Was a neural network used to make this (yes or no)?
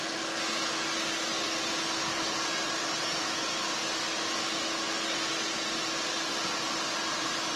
no